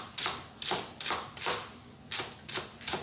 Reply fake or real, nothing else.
real